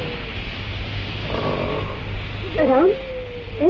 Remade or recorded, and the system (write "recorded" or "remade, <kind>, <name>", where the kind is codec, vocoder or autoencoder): recorded